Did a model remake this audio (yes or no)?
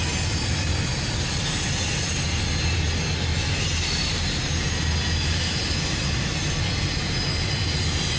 no